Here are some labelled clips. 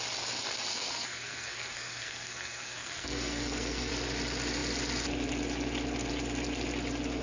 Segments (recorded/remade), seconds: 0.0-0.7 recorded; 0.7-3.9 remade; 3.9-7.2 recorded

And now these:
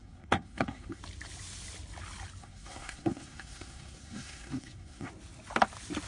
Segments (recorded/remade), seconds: 0.0-1.0 remade; 1.0-2.4 recorded; 2.4-5.1 remade; 5.1-6.1 recorded

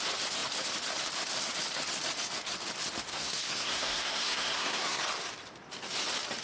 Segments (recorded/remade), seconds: 0.0-3.1 recorded; 3.1-5.0 remade; 5.0-6.4 recorded

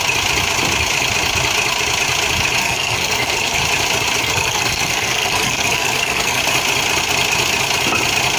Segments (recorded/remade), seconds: 0.0-2.6 recorded; 2.6-3.6 remade; 3.6-4.2 recorded; 4.2-6.4 remade; 6.4-8.4 recorded

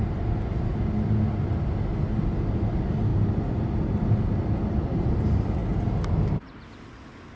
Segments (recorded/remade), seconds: 0.0-7.4 recorded

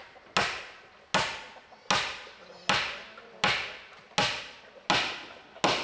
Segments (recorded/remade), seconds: 0.0-5.8 recorded